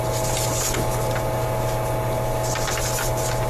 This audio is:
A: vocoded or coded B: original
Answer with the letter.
B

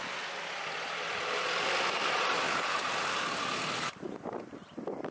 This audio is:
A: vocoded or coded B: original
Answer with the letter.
A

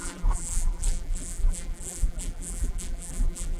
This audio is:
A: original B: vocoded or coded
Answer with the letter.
B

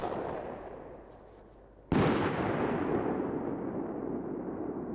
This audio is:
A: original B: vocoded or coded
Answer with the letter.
A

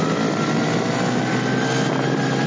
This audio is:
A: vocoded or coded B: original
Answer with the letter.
B